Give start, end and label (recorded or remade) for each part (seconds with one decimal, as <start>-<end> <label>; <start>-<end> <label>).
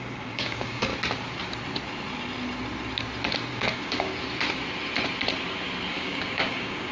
0.0-0.9 remade; 0.9-3.5 recorded; 3.5-4.1 remade; 4.1-5.9 recorded; 5.9-6.9 remade